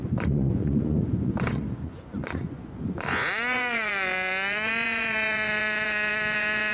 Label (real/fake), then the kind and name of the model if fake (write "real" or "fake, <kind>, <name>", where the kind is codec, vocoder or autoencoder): fake, vocoder, Vocos